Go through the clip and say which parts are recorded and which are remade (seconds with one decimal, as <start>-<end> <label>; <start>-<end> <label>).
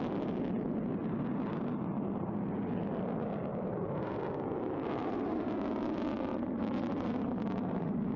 0.0-1.0 recorded; 1.0-1.7 remade; 1.7-3.5 recorded; 3.5-4.2 remade; 4.2-5.0 recorded; 5.0-5.5 remade; 5.5-6.3 recorded; 6.3-8.2 remade